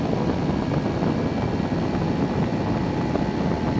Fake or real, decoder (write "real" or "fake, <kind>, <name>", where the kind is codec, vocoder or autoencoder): real